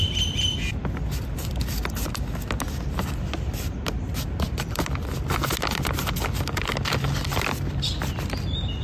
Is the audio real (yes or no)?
yes